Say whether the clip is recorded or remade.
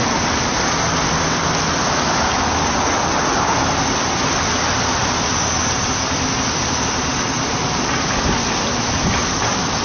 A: recorded